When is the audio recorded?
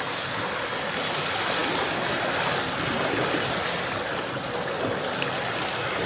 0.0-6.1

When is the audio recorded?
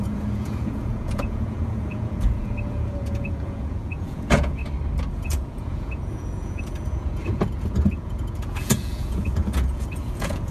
4.6-5.1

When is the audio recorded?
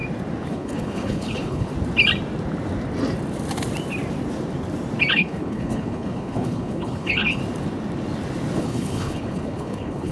0.0-0.5; 1.7-5.1; 7.4-8.6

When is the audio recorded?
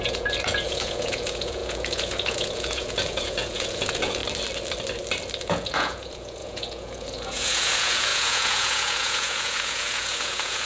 4.2-5.4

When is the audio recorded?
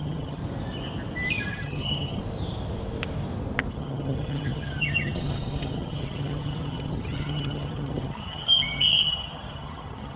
0.4-1.5; 2.2-3.7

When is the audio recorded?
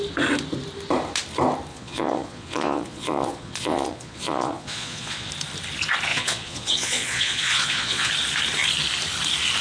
0.0-1.7; 5.3-6.1; 8.1-9.6